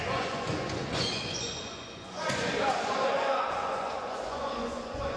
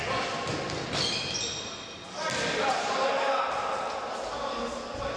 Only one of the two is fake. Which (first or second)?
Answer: first